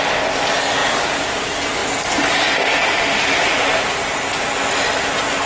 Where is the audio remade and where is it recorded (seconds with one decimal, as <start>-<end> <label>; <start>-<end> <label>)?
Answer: 0.0-0.8 recorded; 0.8-1.4 remade; 1.4-5.5 recorded